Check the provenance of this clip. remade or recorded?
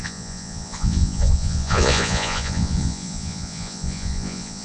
remade